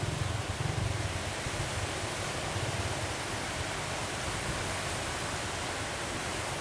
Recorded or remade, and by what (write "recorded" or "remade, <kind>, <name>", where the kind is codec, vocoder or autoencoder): recorded